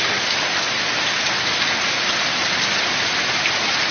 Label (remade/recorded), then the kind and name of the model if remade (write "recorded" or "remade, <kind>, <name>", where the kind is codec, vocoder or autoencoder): recorded